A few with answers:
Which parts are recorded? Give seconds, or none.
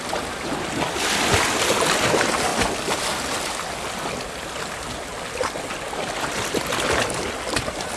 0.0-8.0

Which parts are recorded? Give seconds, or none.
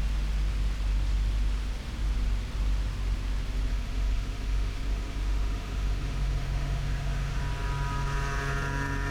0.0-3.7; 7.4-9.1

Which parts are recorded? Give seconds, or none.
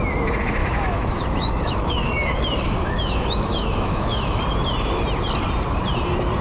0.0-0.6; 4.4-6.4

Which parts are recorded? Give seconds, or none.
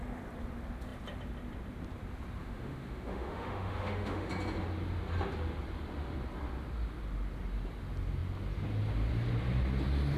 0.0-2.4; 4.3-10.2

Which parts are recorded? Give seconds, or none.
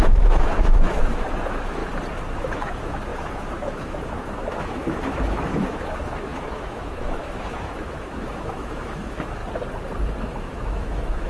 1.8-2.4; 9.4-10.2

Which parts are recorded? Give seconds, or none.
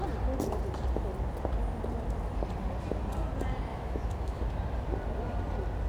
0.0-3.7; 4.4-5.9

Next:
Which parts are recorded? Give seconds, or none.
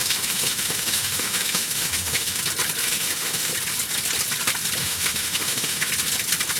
2.4-2.8; 3.5-4.8; 5.9-6.6